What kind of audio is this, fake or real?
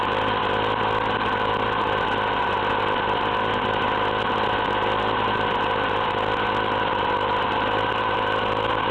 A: real